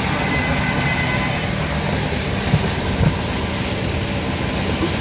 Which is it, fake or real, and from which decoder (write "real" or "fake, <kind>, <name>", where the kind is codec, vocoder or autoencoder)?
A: real